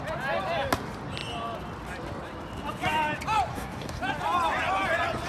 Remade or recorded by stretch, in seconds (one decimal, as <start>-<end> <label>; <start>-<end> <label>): 0.0-3.5 recorded; 3.5-4.0 remade; 4.0-5.3 recorded